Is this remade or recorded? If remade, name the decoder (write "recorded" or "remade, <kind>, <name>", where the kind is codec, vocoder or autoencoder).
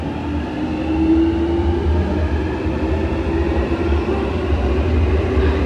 recorded